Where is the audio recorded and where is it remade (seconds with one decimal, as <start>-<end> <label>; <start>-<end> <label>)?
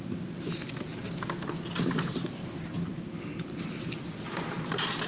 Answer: 0.0-5.1 recorded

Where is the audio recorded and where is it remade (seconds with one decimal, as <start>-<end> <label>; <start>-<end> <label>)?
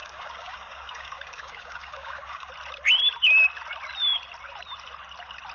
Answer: 0.0-2.5 remade; 2.5-5.5 recorded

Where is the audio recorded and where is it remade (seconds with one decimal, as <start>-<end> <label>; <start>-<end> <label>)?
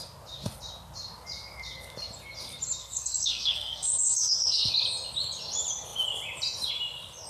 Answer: 0.0-2.8 recorded; 2.8-4.7 remade; 4.7-7.3 recorded